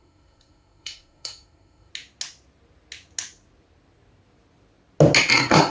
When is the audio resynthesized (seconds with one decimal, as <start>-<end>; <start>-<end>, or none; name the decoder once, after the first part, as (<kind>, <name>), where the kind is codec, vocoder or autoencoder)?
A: 0.0-1.9 (codec, SNAC); 5.3-5.7